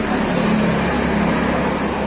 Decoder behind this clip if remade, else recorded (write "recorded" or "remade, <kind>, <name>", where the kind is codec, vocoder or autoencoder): recorded